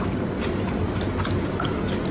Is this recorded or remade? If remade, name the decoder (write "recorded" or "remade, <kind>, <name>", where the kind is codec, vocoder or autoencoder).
recorded